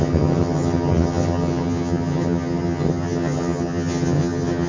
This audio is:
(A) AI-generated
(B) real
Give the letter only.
A